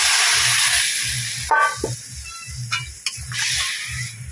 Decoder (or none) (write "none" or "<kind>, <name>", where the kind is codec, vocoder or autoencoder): none